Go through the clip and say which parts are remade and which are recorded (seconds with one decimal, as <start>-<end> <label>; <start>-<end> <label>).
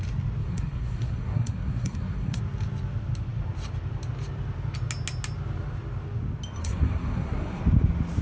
0.0-0.4 recorded; 0.4-2.4 remade; 2.4-6.6 recorded; 6.6-7.6 remade; 7.6-8.2 recorded